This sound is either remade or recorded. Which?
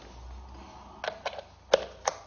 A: recorded